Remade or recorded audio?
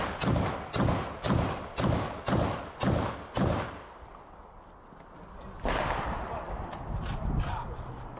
recorded